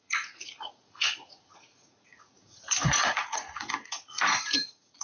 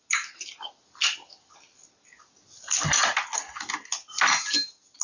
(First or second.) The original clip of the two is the second